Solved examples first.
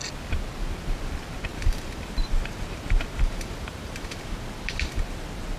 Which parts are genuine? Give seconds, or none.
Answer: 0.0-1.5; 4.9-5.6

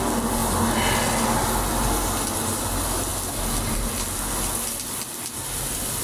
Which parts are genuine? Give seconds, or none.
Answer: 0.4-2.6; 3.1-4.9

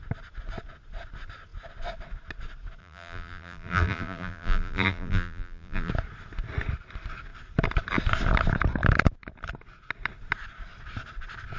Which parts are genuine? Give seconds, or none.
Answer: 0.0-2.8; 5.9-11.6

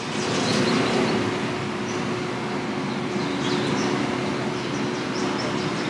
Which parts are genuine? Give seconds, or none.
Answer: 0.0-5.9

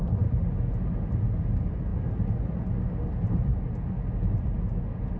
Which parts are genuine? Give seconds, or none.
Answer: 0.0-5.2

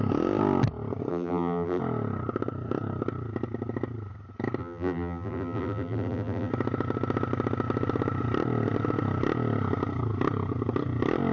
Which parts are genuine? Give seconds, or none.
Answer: 0.0-1.1; 1.8-4.6; 6.5-11.3

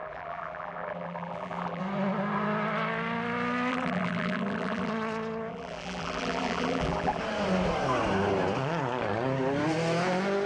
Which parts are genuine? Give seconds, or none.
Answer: 1.8-3.7; 4.9-5.5; 7.2-10.5

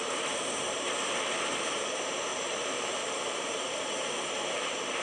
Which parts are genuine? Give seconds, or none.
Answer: 2.3-3.4